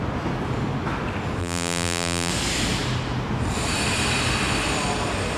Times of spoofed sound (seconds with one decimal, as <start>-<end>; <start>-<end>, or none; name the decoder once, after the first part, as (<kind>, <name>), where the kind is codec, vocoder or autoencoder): 1.4-2.3 (vocoder, BigVGAN v2)